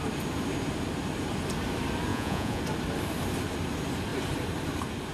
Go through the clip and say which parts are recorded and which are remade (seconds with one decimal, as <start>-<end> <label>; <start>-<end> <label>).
0.0-2.1 recorded; 2.1-2.6 remade; 2.6-5.1 recorded